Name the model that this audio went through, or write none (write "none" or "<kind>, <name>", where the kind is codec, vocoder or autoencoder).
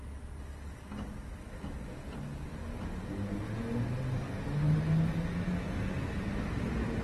none